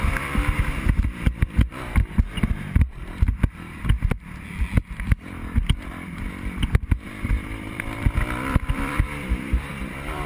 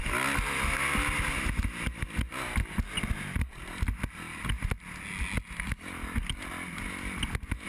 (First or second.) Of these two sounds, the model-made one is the first